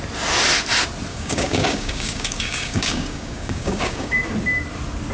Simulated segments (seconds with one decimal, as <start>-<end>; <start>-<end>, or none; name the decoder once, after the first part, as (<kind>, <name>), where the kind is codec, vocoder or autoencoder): 1.1-4.2 (codec, DAC)